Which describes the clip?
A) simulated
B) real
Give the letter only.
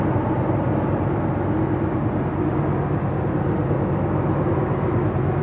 B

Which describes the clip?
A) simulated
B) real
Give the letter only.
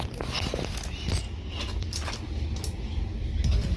B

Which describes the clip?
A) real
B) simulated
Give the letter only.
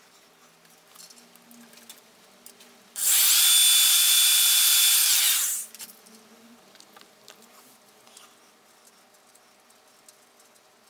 A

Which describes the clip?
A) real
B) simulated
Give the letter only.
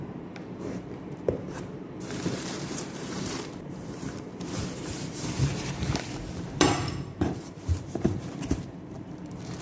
B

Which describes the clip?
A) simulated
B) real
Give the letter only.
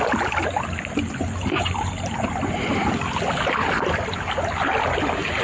B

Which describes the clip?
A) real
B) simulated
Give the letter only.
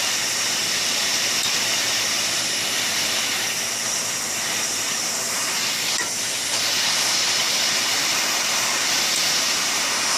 B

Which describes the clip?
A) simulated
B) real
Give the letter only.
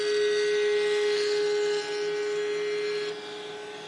B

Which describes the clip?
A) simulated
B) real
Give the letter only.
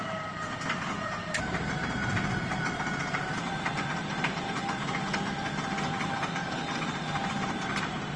A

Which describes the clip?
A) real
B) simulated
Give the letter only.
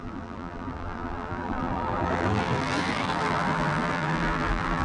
B